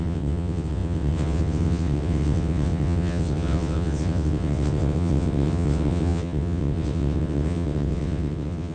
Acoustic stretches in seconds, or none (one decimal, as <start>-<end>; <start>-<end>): none